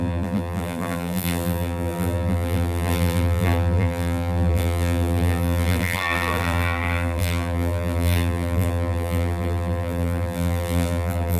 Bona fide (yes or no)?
no